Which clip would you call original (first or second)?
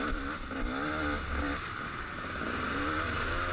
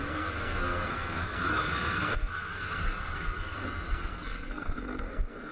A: first